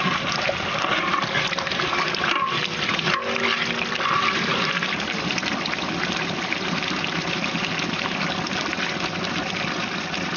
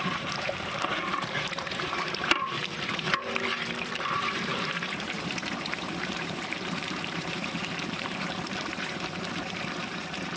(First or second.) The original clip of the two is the first